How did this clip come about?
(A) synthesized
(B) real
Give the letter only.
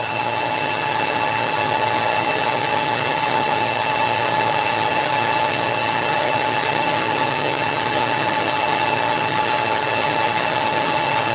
A